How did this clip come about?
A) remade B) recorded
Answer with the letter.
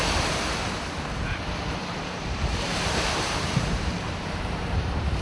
A